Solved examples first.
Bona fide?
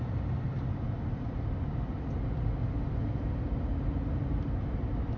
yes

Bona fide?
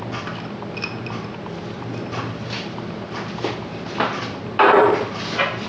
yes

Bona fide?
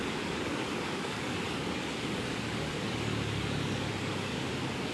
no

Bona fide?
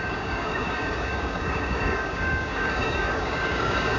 no